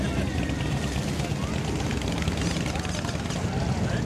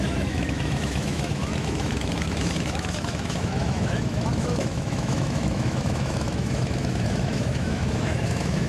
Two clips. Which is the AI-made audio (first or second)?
second